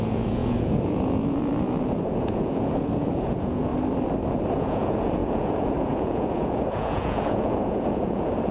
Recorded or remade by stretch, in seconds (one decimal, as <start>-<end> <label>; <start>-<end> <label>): 0.0-3.7 remade; 3.7-4.6 recorded; 4.6-8.5 remade